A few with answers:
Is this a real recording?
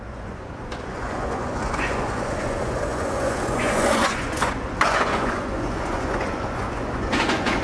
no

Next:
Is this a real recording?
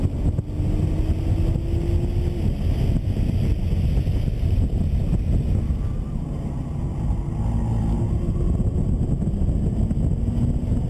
yes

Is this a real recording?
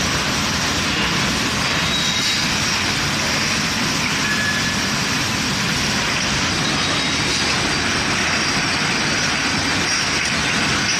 yes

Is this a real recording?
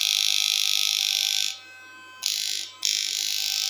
yes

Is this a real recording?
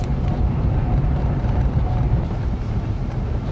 no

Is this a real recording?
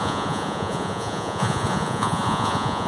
no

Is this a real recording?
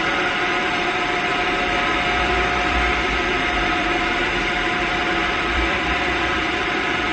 no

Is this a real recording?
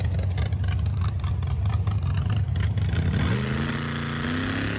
yes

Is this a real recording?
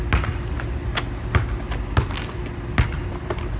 yes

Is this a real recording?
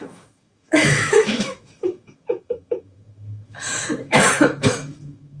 no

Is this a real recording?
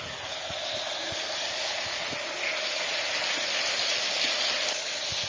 yes